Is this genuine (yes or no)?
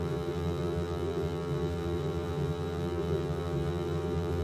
no